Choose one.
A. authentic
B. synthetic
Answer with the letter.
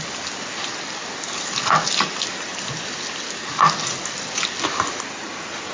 A